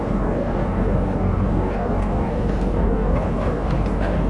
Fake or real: fake